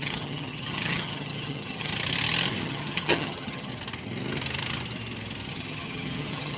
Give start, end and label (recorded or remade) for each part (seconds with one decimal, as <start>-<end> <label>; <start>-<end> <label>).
0.0-1.9 remade; 1.9-2.6 recorded; 2.6-3.7 remade; 3.7-5.5 recorded; 5.5-6.6 remade